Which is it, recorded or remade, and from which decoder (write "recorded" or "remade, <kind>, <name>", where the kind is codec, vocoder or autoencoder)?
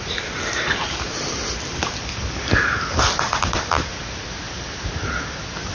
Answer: recorded